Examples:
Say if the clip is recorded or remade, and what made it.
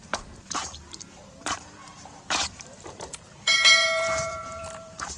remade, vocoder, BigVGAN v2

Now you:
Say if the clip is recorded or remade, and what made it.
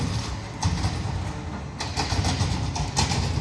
recorded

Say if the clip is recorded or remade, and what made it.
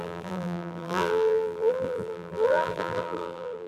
remade, vocoder, BigVGAN v2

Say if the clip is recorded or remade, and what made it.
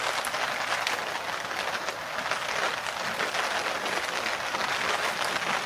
recorded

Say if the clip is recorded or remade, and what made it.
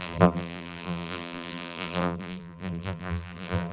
remade, vocoder, BigVGAN v2